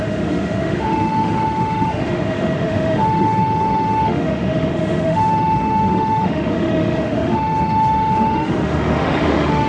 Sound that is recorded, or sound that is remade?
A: remade